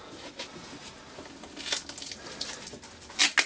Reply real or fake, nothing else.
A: real